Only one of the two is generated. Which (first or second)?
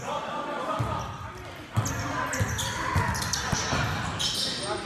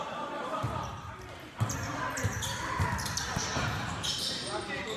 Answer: second